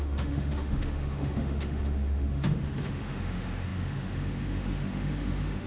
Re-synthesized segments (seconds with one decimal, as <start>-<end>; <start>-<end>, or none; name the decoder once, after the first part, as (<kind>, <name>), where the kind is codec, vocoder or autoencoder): 0.0-5.7 (autoencoder, DAC-VAE)